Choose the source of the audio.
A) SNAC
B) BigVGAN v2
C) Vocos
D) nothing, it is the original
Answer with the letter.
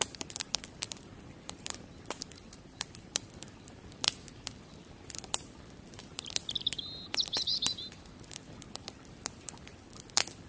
B